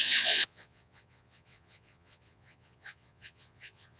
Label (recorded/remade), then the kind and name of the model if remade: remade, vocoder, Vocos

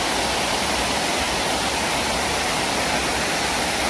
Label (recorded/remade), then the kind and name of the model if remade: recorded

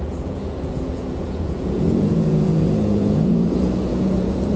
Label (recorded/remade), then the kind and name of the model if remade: remade, vocoder, Vocos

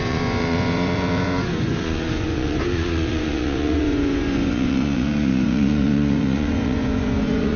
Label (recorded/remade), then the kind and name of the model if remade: remade, vocoder, Vocos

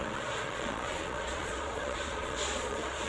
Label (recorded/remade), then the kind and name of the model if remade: remade, vocoder, Vocos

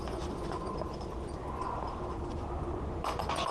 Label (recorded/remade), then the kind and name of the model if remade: remade, vocoder, Vocos